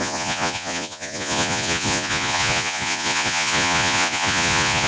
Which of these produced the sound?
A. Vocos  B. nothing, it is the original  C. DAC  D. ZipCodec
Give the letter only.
A